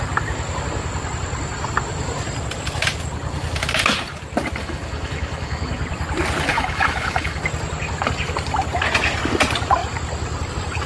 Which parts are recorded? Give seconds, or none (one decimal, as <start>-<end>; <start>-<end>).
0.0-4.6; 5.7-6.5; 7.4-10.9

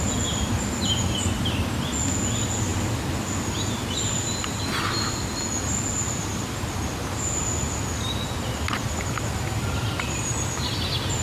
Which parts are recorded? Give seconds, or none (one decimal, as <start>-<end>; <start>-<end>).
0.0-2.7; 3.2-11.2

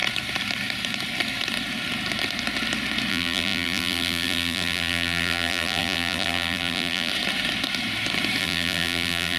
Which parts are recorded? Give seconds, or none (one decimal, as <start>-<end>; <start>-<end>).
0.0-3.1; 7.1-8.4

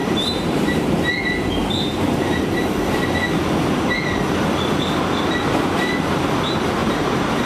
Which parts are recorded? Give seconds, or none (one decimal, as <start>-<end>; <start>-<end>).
0.9-6.8

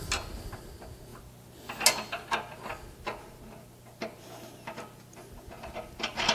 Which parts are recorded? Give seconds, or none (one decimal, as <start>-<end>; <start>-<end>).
0.0-6.3

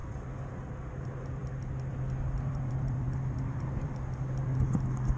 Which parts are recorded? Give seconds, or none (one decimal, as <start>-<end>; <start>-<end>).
0.0-1.4; 4.5-5.2